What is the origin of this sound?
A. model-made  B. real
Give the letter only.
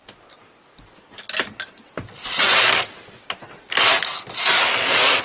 B